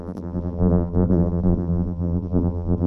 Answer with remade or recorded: remade